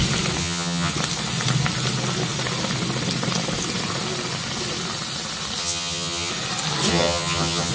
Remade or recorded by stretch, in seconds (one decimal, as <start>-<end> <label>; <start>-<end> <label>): 0.0-0.4 recorded; 0.4-0.9 remade; 0.9-5.6 recorded; 5.6-6.3 remade; 6.3-6.9 recorded; 6.9-7.7 remade